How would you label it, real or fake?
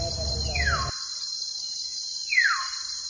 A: real